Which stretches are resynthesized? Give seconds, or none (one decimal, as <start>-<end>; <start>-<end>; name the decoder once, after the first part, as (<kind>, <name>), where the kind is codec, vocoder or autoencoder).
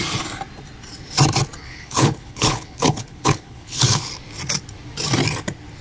1.6-4.1 (codec, HILCodec)